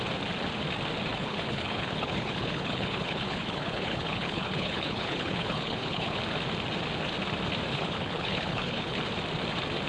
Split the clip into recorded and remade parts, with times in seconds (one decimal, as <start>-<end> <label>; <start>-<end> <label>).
0.0-1.1 recorded; 1.1-6.2 remade; 6.2-7.7 recorded; 7.7-9.0 remade; 9.0-9.9 recorded